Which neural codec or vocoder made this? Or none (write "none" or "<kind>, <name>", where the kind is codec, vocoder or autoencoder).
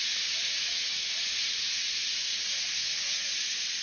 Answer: vocoder, Vocos